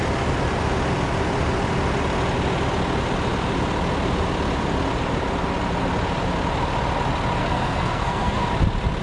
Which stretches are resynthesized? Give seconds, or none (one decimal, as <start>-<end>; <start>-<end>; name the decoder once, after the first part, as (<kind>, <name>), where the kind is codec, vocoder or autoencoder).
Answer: 7.4-8.5 (codec, SNAC)